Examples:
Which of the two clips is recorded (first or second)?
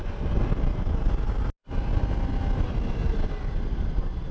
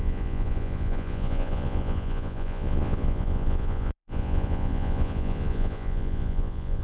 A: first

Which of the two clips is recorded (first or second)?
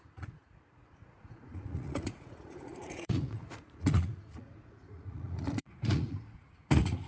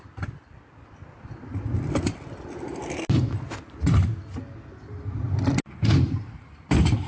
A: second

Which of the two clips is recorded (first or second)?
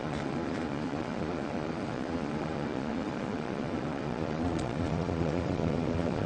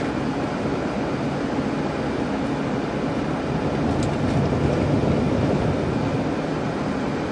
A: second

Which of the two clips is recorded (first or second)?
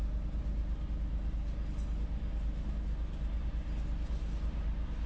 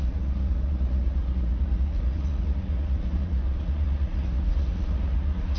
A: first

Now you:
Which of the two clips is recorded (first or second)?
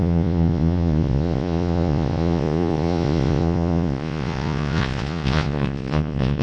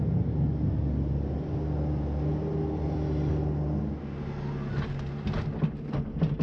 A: second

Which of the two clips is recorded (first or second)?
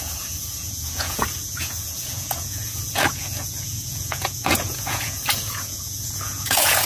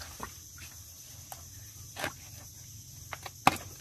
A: second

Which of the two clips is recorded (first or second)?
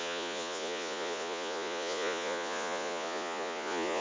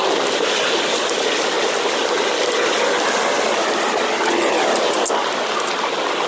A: second